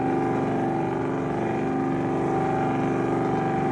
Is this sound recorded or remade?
recorded